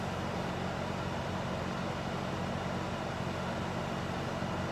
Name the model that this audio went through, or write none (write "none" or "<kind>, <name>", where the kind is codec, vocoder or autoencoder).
none